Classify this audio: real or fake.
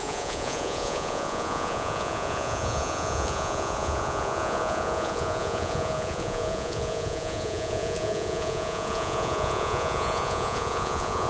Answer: fake